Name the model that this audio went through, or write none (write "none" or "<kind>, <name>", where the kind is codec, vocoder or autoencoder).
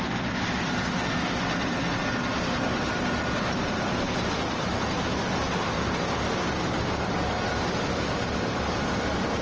none